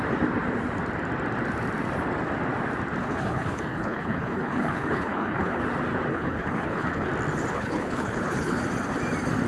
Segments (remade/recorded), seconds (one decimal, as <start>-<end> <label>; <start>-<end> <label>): 0.0-3.0 recorded; 3.0-5.6 remade; 5.6-6.1 recorded; 6.1-7.1 remade; 7.1-7.5 recorded; 7.5-8.6 remade; 8.6-9.5 recorded